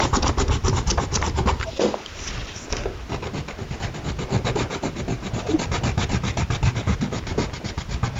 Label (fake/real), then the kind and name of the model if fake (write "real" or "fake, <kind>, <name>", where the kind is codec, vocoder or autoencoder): real